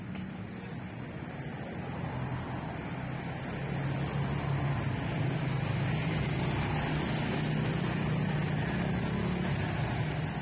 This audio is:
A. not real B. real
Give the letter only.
B